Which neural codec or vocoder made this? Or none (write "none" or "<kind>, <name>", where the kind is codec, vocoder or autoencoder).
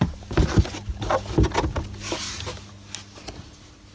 none